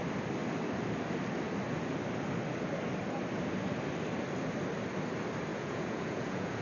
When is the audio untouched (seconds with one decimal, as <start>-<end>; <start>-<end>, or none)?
0.0-5.5